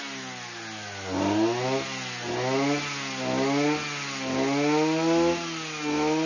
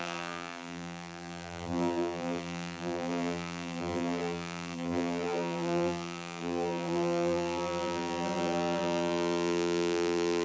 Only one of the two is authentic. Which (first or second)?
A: first